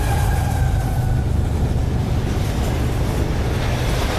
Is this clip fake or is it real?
real